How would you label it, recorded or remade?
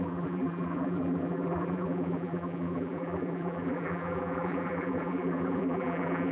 remade